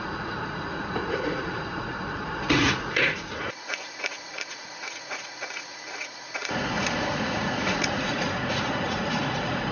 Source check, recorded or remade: remade